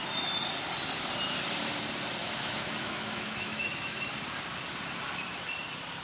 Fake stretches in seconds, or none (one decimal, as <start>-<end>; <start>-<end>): 2.2-4.1